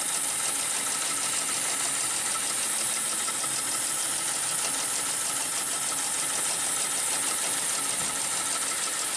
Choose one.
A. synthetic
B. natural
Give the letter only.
B